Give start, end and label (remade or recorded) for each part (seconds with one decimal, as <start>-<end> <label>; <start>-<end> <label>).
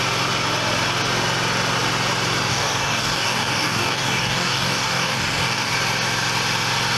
0.0-2.5 recorded; 2.5-5.7 remade; 5.7-7.0 recorded